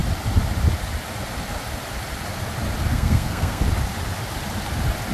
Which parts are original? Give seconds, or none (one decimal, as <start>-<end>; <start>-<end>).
0.0-2.9; 3.6-5.1